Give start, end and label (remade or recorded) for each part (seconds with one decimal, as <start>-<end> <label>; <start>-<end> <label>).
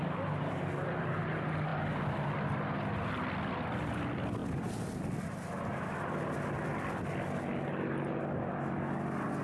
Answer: 0.0-9.4 recorded